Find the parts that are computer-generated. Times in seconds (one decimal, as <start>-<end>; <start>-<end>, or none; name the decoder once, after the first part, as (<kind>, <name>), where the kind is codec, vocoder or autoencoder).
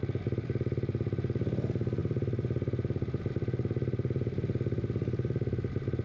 none